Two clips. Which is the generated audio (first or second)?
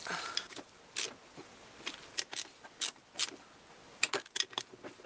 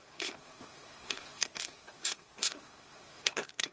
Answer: second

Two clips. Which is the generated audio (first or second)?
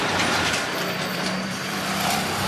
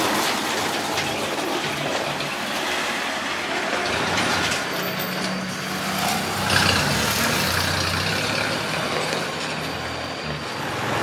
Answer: first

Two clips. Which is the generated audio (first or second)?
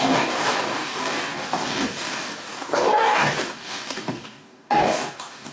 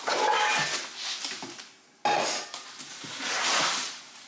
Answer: first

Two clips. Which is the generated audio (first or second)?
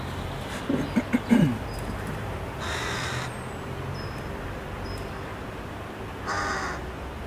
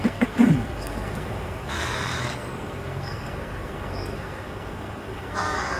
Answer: second